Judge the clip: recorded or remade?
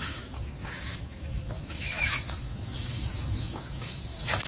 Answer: remade